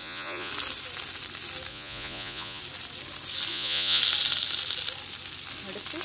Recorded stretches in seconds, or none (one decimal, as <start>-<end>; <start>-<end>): 0.5-1.7; 2.6-3.5; 4.0-6.0

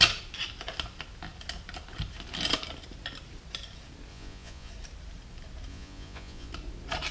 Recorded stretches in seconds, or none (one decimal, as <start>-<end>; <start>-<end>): 0.0-4.1; 4.7-5.7; 6.5-7.1

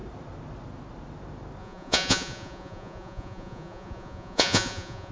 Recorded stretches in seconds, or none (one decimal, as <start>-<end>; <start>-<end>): 0.0-1.6

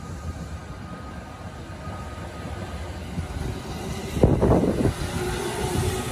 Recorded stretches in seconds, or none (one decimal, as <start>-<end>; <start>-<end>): 0.0-6.1

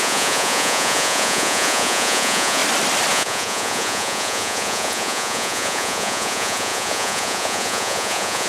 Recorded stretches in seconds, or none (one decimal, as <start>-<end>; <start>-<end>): 2.6-3.1

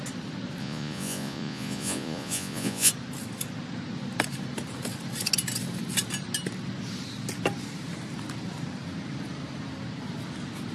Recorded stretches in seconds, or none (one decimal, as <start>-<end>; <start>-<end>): 0.0-0.6; 2.9-10.7

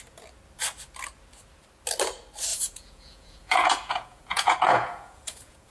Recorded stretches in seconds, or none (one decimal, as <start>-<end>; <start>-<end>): 0.0-2.5

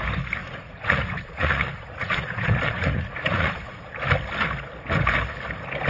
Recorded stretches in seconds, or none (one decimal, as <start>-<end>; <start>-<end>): 0.0-0.4; 3.9-5.9